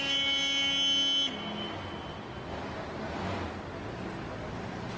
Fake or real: real